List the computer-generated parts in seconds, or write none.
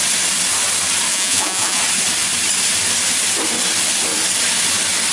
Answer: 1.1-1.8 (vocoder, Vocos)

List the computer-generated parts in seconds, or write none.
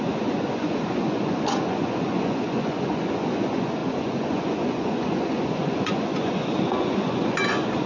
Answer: 0.0-7.9 (vocoder, Vocos)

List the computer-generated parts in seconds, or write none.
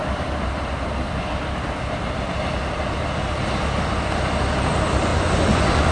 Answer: 5.1-5.9 (vocoder, Vocos)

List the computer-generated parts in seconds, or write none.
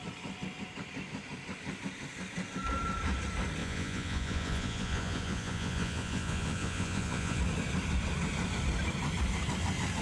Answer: 3.6-7.4 (vocoder, Vocos)